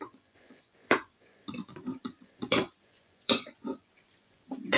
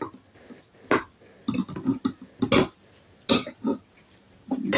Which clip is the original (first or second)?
second